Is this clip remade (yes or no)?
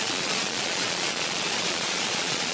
yes